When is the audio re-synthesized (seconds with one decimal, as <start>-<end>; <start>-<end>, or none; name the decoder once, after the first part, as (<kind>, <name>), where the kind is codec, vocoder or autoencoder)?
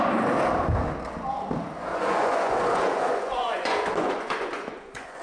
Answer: 1.9-5.2 (vocoder, Vocos)